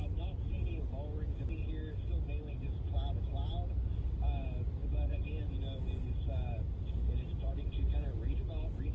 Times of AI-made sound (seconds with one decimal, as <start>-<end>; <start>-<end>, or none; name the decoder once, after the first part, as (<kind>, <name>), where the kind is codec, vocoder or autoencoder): none